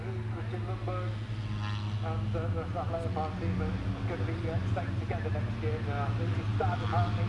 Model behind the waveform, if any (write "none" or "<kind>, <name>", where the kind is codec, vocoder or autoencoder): none